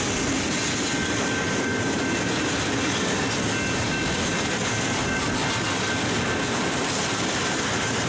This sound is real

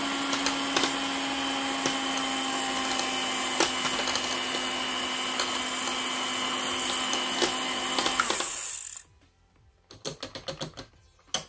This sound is real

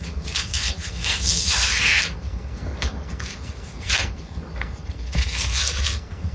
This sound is fake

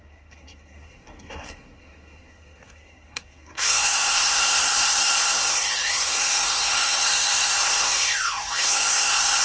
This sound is fake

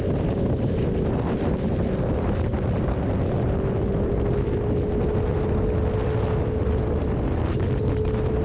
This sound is real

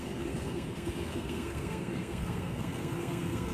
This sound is fake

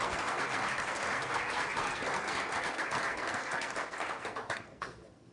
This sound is fake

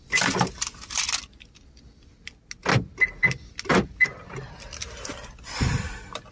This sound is real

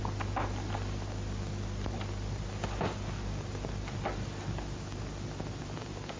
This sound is real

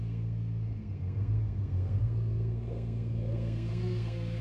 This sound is fake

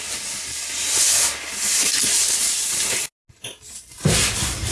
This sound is real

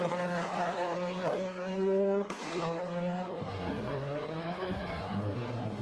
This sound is fake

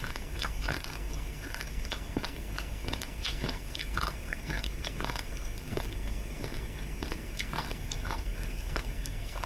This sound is fake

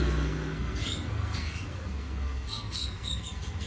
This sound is fake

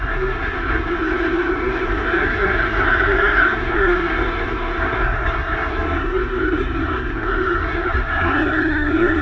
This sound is fake